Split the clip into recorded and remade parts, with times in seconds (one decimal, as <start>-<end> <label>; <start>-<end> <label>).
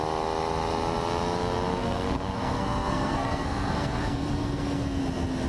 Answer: 0.0-1.7 recorded; 1.7-5.0 remade; 5.0-5.5 recorded